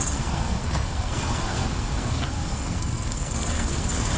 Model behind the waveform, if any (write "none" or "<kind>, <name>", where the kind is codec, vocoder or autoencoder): codec, SNAC